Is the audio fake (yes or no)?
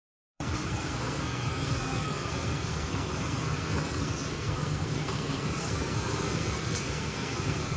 yes